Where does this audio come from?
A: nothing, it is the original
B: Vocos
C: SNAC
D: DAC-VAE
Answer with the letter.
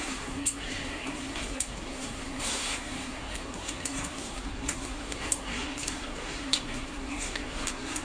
C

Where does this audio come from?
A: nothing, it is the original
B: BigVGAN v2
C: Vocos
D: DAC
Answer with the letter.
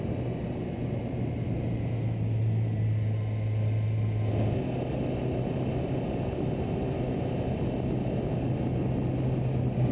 A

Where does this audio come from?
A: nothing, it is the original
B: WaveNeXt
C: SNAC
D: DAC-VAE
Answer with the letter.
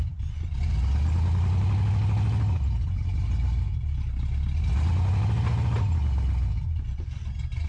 A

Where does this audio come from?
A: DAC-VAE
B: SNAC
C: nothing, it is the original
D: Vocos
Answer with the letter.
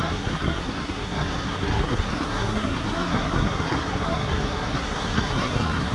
B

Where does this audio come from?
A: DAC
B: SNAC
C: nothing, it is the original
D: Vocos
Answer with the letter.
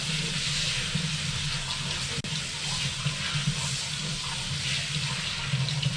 C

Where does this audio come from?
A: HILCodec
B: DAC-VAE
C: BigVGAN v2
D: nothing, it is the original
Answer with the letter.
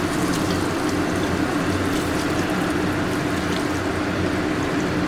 D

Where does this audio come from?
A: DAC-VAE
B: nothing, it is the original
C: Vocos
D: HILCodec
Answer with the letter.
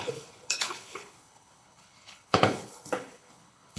D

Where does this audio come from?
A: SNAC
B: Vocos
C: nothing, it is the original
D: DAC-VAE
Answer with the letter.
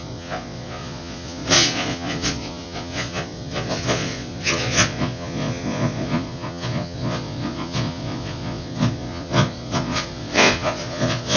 B